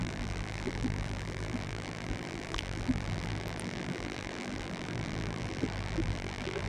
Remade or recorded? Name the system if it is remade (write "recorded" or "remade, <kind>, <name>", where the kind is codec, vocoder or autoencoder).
remade, vocoder, BigVGAN v2